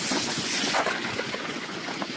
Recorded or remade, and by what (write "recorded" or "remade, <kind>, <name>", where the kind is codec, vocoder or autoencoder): remade, vocoder, Vocos